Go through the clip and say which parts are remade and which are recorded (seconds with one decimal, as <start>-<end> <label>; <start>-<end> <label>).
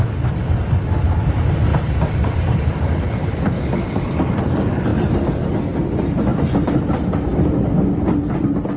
0.0-1.7 recorded; 1.7-3.4 remade; 3.4-8.8 recorded